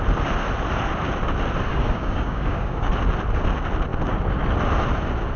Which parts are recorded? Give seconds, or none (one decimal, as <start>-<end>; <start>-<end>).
0.0-1.7; 2.9-5.4